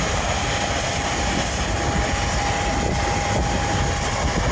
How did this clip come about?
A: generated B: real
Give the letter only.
B